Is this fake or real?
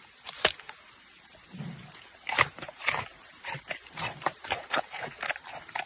fake